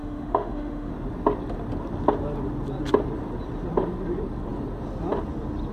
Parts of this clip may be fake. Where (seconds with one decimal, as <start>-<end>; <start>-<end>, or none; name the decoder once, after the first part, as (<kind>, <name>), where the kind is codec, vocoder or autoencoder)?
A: 0.0-0.9 (autoencoder, DAC-VAE)